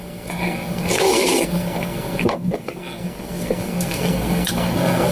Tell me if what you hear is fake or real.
fake